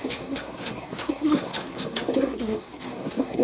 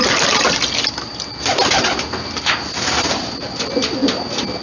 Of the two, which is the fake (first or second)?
first